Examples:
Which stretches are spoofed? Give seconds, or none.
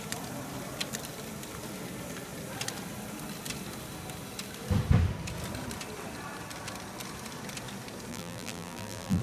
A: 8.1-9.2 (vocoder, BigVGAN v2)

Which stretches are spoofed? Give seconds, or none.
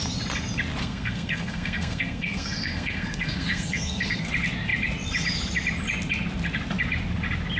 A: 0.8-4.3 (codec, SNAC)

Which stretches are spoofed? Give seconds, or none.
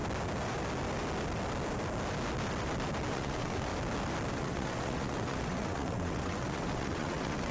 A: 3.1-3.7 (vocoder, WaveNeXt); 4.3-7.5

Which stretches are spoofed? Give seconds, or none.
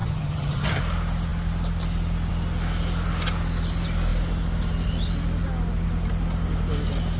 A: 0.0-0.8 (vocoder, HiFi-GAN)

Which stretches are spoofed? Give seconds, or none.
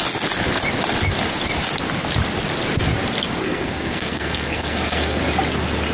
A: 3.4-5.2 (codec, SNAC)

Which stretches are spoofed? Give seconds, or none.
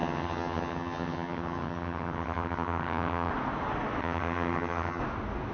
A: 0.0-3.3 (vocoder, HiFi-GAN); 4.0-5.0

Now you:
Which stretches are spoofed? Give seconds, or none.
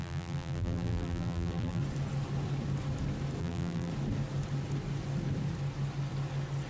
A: 0.0-1.8 (vocoder, BigVGAN v2); 3.4-3.9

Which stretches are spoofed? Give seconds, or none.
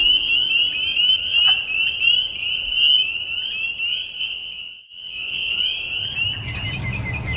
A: 4.2-5.6 (vocoder, WaveNeXt)